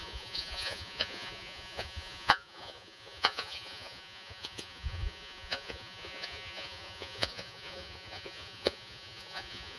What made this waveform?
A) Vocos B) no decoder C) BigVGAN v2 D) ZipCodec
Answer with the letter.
A